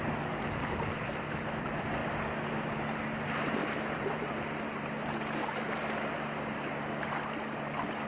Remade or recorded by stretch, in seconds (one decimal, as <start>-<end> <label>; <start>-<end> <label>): 0.0-3.6 recorded; 3.6-4.3 remade; 4.3-8.1 recorded